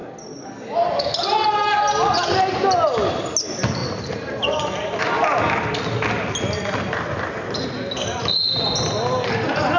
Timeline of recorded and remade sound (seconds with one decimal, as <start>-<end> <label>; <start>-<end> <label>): 0.0-9.8 recorded